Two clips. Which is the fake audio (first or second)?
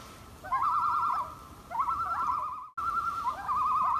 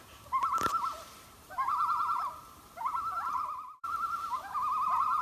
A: second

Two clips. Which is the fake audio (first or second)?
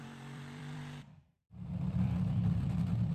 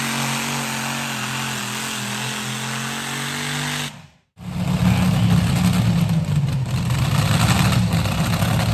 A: first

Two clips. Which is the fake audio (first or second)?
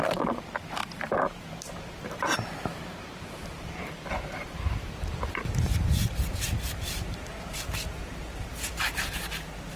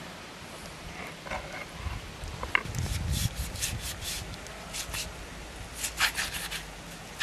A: first